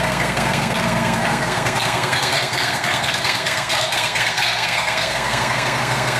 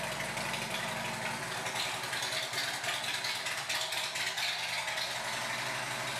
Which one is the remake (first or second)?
first